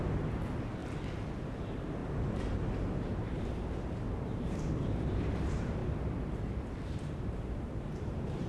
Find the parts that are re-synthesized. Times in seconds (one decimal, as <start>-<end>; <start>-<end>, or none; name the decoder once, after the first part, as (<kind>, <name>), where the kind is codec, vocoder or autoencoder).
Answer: 0.0-0.8 (vocoder, BigVGAN v2); 1.6-2.0; 2.7-5.8; 7.1-8.5